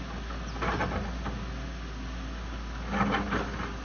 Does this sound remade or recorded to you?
recorded